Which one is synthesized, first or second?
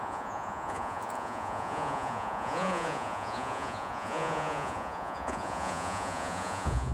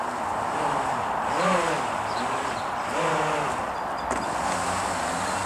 first